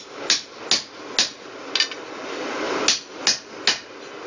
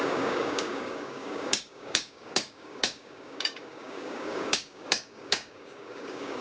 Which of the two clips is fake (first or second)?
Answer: second